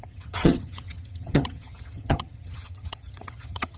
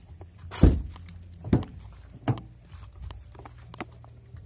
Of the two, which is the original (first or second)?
second